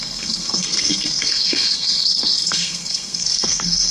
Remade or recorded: remade